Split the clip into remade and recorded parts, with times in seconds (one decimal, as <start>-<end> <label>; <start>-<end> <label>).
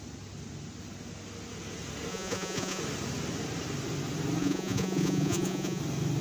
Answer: 0.0-2.1 recorded; 2.1-2.8 remade; 2.8-4.4 recorded; 4.4-5.8 remade; 5.8-6.2 recorded